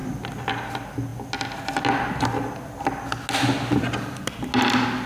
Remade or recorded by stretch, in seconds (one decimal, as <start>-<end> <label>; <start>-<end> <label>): 0.0-5.1 recorded